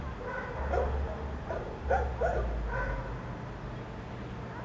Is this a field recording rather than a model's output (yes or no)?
yes